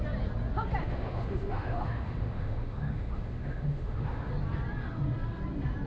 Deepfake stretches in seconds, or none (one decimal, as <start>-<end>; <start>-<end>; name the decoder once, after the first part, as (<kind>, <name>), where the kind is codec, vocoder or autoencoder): 0.8-4.3 (autoencoder, DAC-VAE)